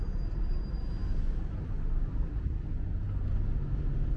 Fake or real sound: real